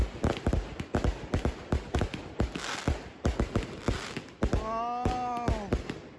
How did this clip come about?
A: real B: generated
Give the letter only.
A